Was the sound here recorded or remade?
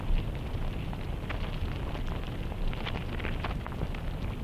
recorded